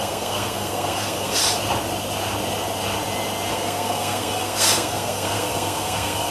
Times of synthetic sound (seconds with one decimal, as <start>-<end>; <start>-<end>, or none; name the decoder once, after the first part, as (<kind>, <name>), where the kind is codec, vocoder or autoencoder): 0.0-1.4 (codec, SNAC); 3.5-6.3